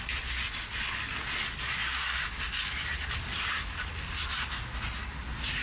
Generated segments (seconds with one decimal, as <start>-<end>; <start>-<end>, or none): 1.8-2.4